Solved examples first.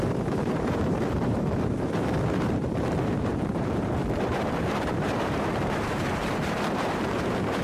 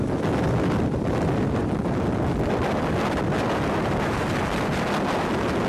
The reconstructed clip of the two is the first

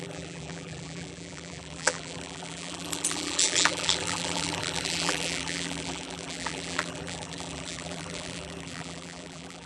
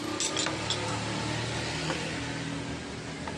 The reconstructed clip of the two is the first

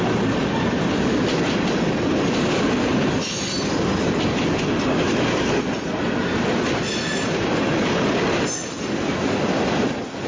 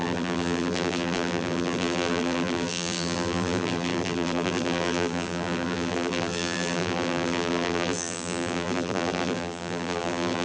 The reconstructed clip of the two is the second